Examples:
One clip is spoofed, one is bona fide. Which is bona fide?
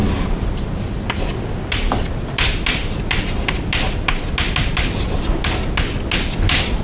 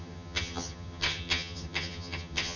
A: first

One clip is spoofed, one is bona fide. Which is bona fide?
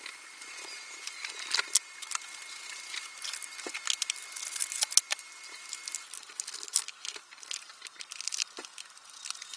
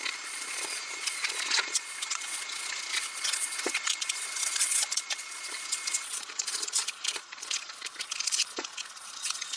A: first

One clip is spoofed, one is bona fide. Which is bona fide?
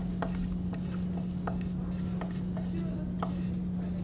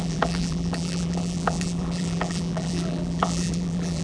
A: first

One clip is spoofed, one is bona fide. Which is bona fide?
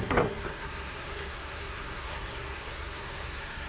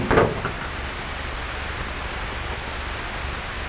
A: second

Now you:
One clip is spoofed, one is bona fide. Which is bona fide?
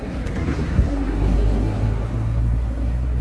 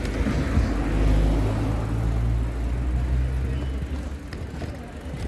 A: second